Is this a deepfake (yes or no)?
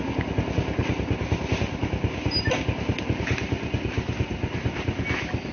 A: no